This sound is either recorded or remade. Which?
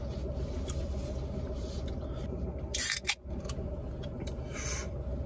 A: recorded